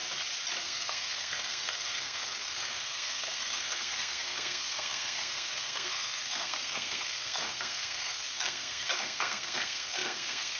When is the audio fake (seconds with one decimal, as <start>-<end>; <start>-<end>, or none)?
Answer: 0.6-10.6